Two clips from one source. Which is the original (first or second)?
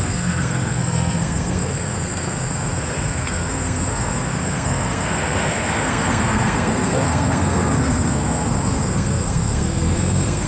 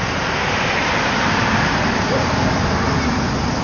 second